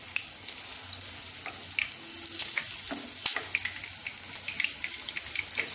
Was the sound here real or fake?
real